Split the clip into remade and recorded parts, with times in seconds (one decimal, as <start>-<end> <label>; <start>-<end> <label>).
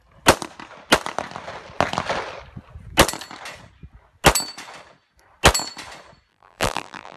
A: 0.0-6.3 recorded; 6.3-7.2 remade